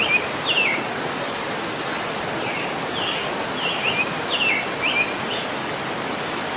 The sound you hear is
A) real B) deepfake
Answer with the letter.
A